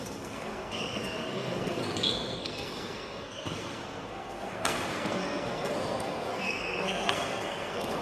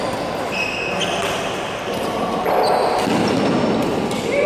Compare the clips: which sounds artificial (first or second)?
first